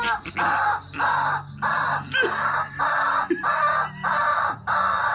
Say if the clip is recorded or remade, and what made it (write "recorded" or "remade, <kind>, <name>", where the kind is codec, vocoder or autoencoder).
recorded